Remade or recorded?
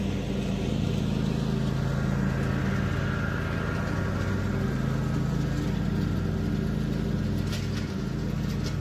recorded